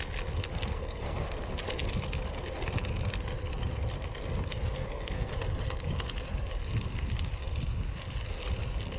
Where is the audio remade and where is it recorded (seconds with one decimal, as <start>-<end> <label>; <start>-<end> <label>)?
0.0-0.7 recorded; 0.7-1.3 remade; 1.3-4.8 recorded; 4.8-5.3 remade; 5.3-9.0 recorded